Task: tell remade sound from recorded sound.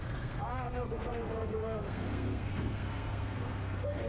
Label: remade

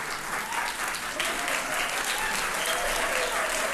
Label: recorded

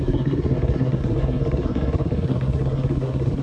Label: remade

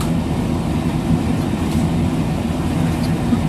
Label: recorded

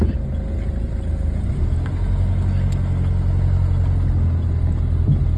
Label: recorded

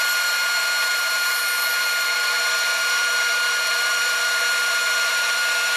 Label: remade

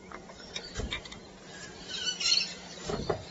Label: remade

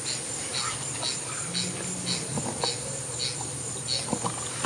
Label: recorded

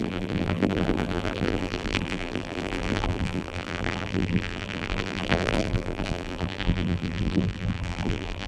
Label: remade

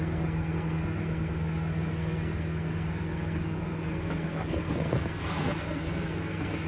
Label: remade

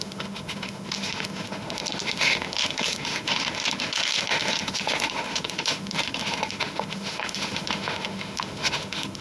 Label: remade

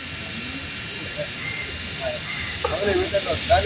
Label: recorded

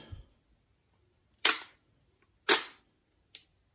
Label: recorded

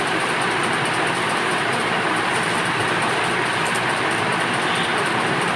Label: recorded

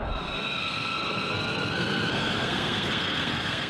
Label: remade